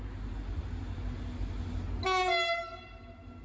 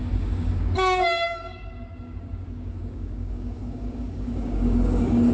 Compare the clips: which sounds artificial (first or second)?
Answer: second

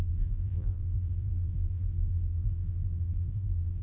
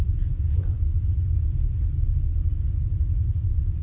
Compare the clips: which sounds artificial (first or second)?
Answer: first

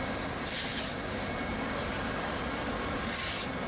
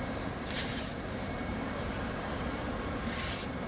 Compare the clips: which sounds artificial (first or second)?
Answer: second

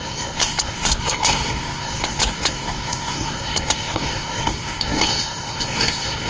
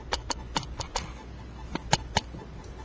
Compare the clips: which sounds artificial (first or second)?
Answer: first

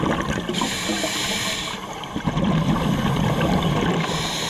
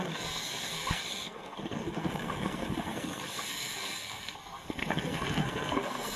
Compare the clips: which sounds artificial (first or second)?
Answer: second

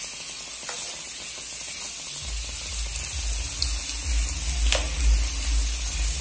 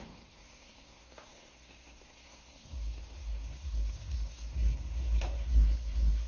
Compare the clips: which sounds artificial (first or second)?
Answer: second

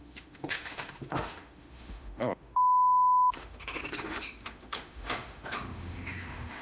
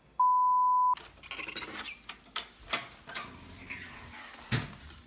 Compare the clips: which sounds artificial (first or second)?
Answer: first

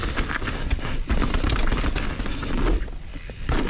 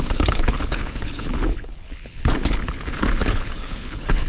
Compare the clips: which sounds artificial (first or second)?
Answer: second